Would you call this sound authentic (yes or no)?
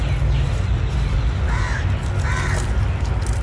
yes